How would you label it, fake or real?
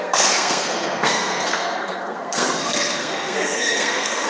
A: fake